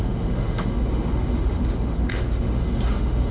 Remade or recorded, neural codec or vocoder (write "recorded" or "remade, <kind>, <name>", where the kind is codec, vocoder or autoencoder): remade, autoencoder, DAC-VAE